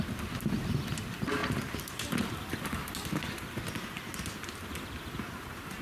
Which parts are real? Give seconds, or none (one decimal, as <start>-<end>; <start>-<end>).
0.0-5.8

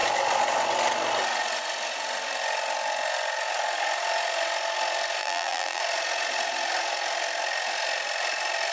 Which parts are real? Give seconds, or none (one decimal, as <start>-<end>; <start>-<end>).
0.0-5.2; 5.8-8.7

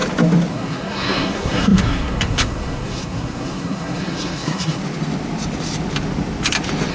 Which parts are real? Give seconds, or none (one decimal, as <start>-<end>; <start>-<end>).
0.0-0.5; 4.8-6.9

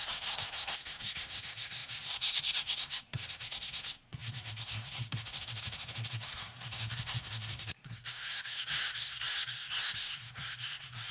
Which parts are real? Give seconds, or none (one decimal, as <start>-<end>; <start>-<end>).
none

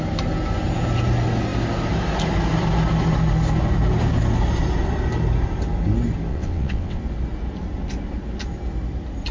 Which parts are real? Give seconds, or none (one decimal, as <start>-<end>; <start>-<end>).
0.0-6.3; 7.0-9.3

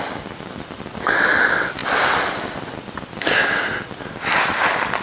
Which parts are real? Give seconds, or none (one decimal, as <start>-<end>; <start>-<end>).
0.0-5.0

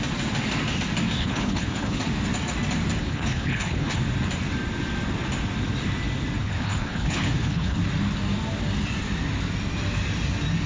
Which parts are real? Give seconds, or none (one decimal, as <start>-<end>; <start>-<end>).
0.0-1.2; 2.0-3.0; 4.0-6.4; 7.8-10.7

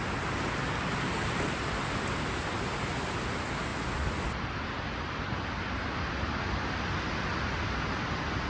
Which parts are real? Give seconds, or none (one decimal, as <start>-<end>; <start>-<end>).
0.0-8.5